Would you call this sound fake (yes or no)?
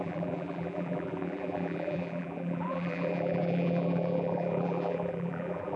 yes